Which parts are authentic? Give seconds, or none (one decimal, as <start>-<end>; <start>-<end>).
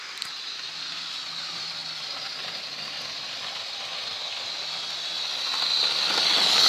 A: 0.0-6.7